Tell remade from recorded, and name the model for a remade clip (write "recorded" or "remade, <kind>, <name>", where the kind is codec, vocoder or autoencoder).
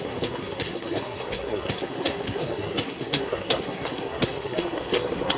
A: remade, codec, SNAC